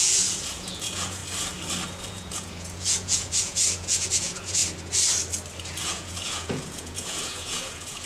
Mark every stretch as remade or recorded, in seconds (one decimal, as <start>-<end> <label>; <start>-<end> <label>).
0.0-1.2 remade; 1.2-2.0 recorded; 2.0-4.6 remade; 4.6-5.8 recorded; 5.8-8.1 remade